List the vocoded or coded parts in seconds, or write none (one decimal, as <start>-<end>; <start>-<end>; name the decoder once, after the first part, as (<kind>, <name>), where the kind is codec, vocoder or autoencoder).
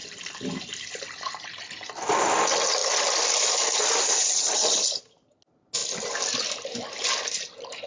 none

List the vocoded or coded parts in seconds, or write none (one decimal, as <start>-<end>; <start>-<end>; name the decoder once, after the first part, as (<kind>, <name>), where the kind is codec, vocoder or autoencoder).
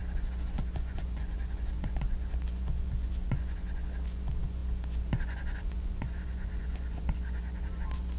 0.0-8.2 (vocoder, Vocos)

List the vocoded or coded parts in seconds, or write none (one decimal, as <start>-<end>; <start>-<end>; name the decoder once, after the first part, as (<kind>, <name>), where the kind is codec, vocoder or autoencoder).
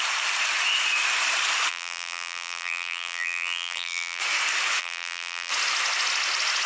1.7-4.2 (vocoder, BigVGAN v2); 4.8-5.5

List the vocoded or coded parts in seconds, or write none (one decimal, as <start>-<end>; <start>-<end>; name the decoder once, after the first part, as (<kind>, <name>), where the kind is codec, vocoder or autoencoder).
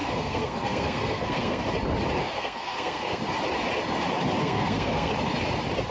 0.0-1.6 (codec, SNAC); 2.2-3.2; 4.4-5.1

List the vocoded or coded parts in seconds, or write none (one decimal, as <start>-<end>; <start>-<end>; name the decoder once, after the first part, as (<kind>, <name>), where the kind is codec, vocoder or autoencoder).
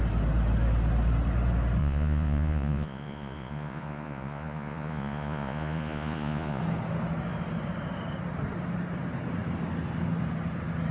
1.8-6.6 (vocoder, Vocos)